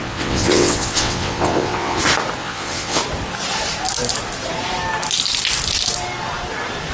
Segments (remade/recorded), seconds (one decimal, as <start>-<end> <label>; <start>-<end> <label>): 0.0-2.0 remade; 2.0-2.4 recorded; 2.4-3.0 remade; 3.0-6.9 recorded